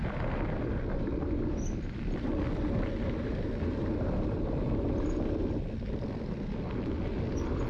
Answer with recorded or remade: recorded